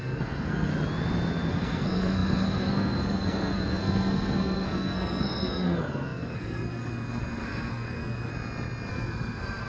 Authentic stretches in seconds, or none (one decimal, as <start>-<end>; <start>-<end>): 0.7-1.5; 8.3-8.9